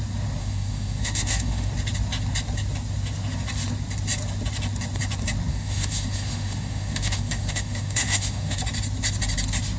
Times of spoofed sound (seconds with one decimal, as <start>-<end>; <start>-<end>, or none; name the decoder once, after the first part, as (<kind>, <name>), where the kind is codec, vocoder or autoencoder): 0.4-1.7 (autoencoder, DAC-VAE); 5.5-8.6